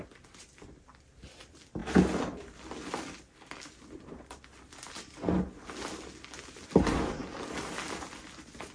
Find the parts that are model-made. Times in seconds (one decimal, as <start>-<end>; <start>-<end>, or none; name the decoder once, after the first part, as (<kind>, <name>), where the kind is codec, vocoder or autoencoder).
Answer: none